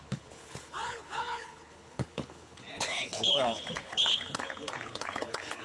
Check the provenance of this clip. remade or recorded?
remade